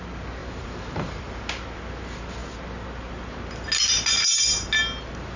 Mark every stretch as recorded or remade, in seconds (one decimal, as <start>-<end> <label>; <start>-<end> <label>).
0.0-0.4 recorded; 0.4-1.2 remade; 1.2-5.4 recorded